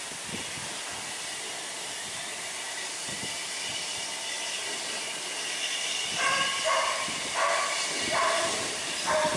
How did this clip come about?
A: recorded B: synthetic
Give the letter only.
B